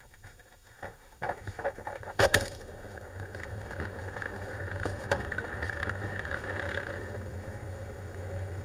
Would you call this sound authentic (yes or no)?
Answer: no